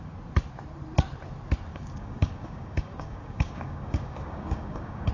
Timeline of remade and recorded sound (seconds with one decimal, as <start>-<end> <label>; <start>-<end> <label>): 0.0-1.7 recorded; 1.7-5.1 remade